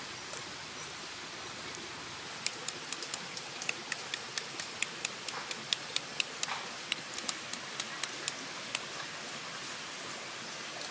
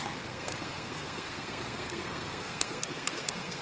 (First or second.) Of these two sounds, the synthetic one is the second